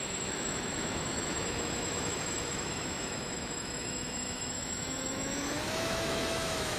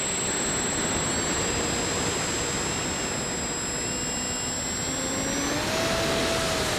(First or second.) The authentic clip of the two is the second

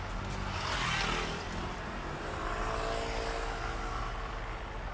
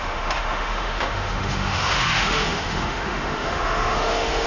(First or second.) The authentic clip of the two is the first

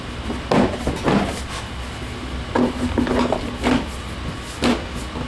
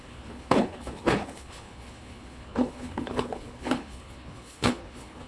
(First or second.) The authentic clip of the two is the first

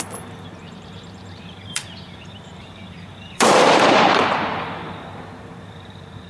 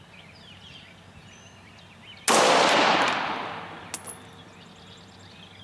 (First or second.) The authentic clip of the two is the second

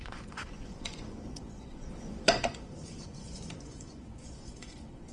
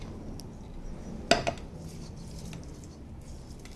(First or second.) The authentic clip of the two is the second